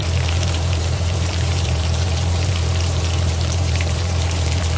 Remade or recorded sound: remade